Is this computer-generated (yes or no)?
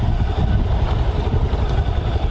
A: no